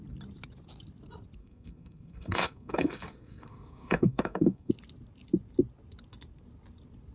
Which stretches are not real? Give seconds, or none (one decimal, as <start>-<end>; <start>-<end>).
1.4-4.7